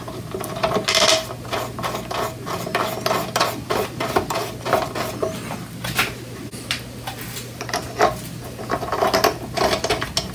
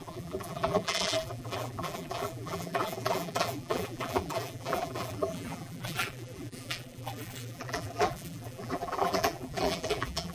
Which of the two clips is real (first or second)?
first